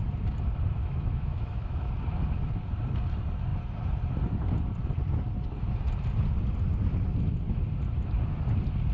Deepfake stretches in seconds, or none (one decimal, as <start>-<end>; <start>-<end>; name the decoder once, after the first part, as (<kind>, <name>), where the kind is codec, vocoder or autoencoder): 0.8-1.9 (autoencoder, DAC-VAE)